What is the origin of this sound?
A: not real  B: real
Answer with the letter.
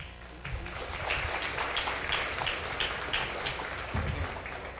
B